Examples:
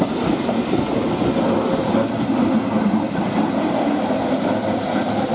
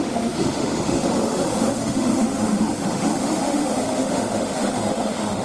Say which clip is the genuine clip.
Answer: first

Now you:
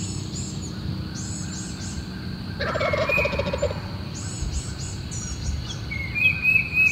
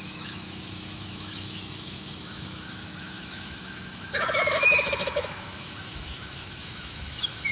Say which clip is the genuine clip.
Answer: first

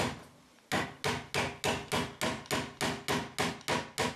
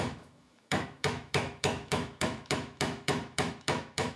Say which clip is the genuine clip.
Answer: first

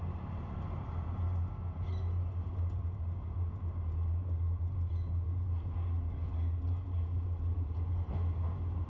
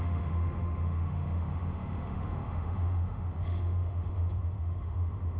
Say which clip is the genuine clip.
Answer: first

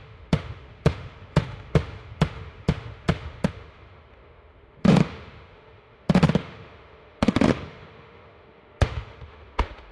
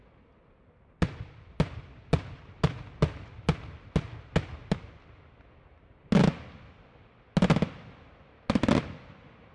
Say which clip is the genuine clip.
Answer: second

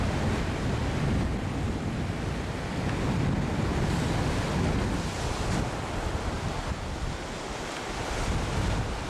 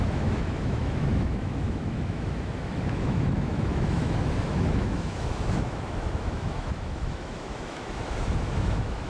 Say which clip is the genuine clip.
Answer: first